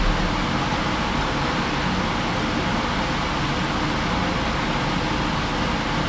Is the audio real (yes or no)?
yes